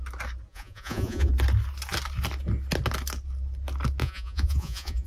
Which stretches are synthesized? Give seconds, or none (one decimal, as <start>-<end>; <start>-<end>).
0.5-1.3; 4.0-5.1